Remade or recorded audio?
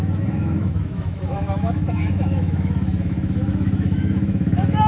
remade